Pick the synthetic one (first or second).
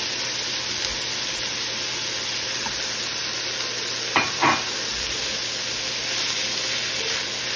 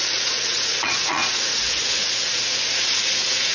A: second